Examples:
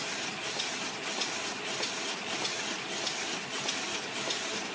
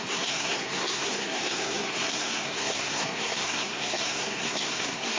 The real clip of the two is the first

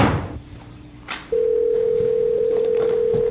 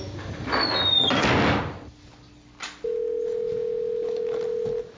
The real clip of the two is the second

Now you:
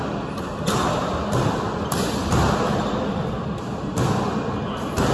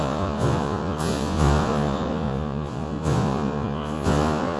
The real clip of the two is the first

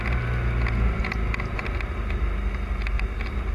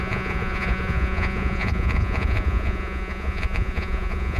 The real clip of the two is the first